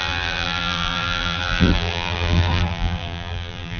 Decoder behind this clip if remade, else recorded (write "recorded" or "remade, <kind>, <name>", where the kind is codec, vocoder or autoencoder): remade, vocoder, BigVGAN v2